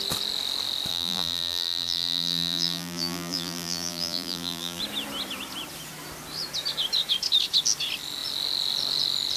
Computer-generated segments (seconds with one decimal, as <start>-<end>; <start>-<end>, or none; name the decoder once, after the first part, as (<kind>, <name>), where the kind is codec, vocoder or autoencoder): 0.9-4.8 (vocoder, BigVGAN v2)